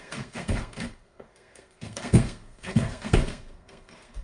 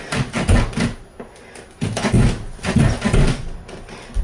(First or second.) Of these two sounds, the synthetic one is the first